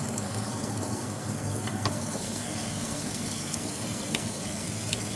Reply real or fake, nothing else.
fake